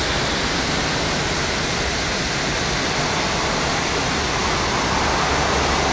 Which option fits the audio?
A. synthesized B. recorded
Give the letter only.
B